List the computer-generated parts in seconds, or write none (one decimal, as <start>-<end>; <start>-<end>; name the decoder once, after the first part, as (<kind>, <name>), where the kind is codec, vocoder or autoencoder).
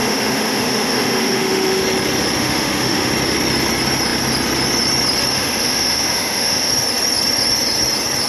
0.0-1.8 (autoencoder, DAC-VAE); 2.4-3.1; 5.3-6.7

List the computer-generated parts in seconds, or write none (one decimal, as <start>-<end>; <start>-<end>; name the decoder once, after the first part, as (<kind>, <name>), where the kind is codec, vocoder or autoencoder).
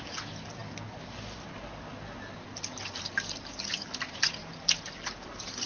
none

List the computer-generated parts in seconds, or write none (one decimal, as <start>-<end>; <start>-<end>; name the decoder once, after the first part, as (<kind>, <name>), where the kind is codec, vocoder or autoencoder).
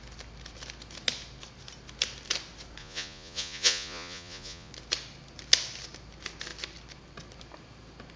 2.8-4.7 (vocoder, Vocos)